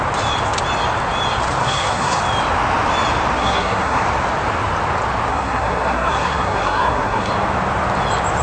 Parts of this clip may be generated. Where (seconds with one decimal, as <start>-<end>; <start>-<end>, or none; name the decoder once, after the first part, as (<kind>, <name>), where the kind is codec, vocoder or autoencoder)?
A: 1.6-2.2 (codec, SNAC); 3.4-4.0; 5.3-7.3